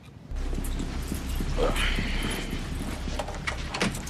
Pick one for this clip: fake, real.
real